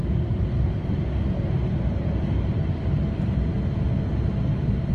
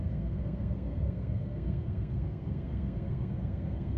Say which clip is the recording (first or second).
first